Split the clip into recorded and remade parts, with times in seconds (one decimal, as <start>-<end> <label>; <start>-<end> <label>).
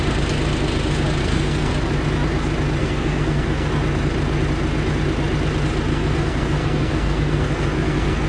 0.0-1.2 recorded; 1.2-1.7 remade; 1.7-2.8 recorded; 2.8-3.7 remade; 3.7-5.9 recorded; 5.9-8.3 remade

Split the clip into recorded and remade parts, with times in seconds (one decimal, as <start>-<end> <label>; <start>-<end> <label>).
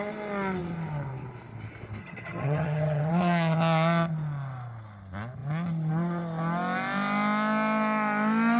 0.0-2.0 recorded; 2.0-3.1 remade; 3.1-8.6 recorded